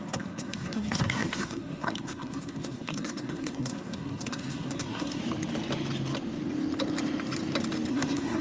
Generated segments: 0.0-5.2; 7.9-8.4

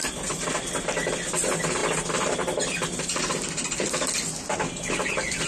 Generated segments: none

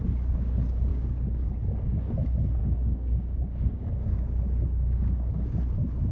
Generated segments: 0.9-1.5; 2.6-5.3

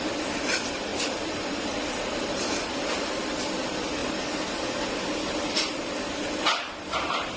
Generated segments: none

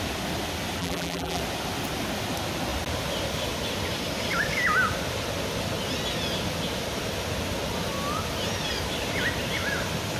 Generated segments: 0.8-1.4

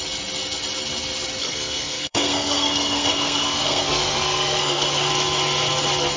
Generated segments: 1.4-5.1